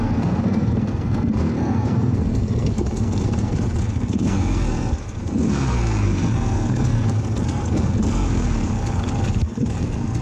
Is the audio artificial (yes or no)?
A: yes